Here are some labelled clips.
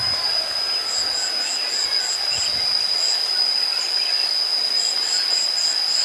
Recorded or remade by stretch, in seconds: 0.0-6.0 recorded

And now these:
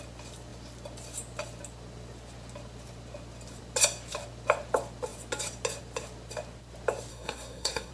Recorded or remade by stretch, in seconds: 0.0-7.1 recorded; 7.1-7.9 remade

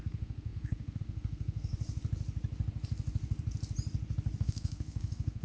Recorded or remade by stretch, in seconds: 0.0-1.7 remade; 1.7-4.4 recorded; 4.4-5.4 remade

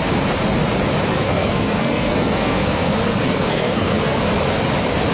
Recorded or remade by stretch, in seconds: 0.0-1.1 recorded; 1.1-4.2 remade; 4.2-5.1 recorded

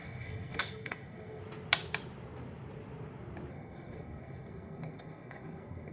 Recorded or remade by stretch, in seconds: 0.0-1.4 remade; 1.4-3.5 recorded; 3.5-5.9 remade

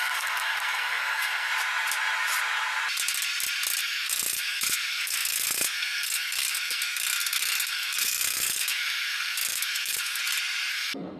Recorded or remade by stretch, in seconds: 0.0-1.5 remade; 1.5-3.8 recorded; 3.8-10.2 remade; 10.2-10.7 recorded; 10.7-11.2 remade

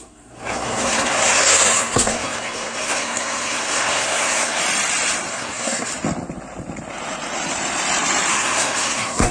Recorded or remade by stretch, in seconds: 0.0-4.6 remade; 4.6-5.3 recorded; 5.3-5.9 remade; 5.9-8.3 recorded; 8.3-9.3 remade